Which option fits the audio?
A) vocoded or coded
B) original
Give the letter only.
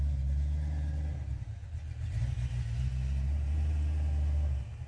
B